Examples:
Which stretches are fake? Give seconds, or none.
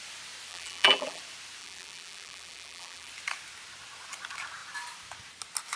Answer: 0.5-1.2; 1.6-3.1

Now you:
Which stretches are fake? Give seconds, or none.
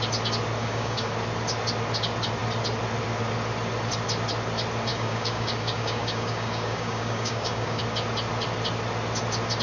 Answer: 0.6-1.1; 4.9-7.8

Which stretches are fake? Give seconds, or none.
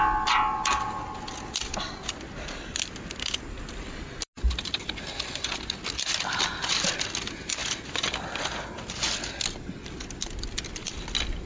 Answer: none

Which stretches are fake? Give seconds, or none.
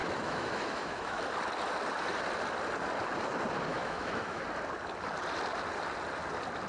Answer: 0.0-1.2; 3.7-4.4